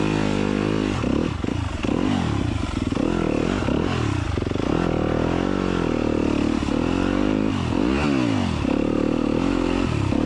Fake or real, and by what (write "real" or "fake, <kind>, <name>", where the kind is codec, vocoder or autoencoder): real